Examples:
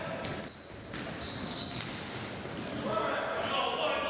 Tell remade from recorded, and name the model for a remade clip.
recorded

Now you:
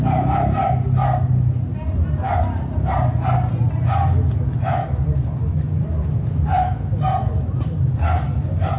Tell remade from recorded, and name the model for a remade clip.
recorded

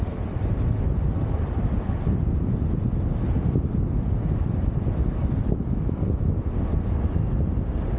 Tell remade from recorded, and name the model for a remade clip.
recorded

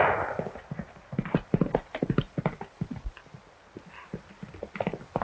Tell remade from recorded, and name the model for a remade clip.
recorded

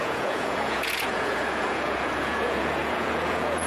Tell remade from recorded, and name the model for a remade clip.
remade, vocoder, Vocos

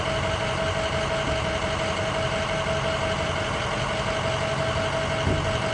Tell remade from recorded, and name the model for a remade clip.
recorded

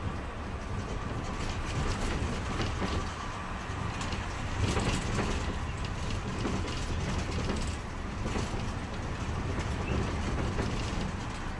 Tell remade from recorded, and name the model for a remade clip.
recorded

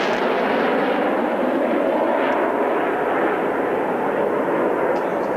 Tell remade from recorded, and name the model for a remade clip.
recorded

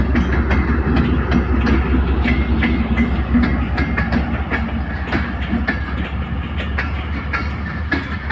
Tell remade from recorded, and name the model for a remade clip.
recorded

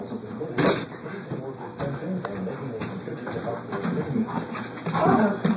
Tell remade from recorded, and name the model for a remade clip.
recorded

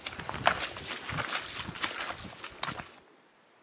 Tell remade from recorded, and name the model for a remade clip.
recorded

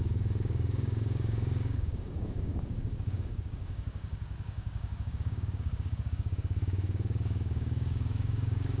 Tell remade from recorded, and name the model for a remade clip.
remade, codec, DAC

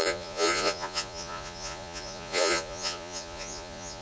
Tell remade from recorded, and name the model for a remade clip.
remade, vocoder, Vocos